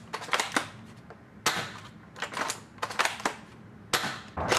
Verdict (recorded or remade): recorded